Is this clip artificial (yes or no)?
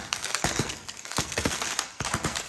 yes